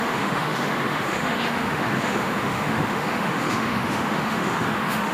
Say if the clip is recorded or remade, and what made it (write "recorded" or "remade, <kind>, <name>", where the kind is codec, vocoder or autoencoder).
remade, autoencoder, DAC-VAE